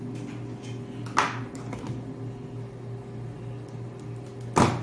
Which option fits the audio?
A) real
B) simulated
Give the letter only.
A